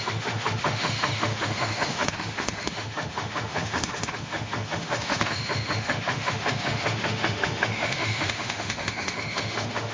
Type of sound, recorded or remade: remade